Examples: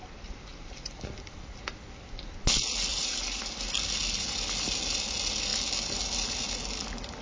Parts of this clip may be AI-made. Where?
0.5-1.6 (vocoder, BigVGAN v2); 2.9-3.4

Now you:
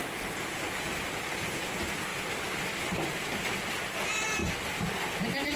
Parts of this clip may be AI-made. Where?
2.1-3.7 (vocoder, BigVGAN v2); 4.4-4.9

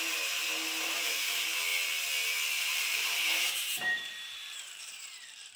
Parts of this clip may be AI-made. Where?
0.0-1.7 (vocoder, BigVGAN v2); 2.6-5.6

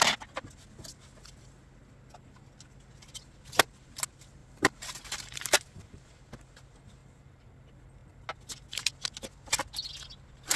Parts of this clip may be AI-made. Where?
4.4-6.2 (vocoder, BigVGAN v2); 7.0-7.5

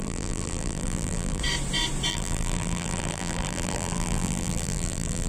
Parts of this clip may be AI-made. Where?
0.0-1.4 (vocoder, BigVGAN v2); 2.1-5.3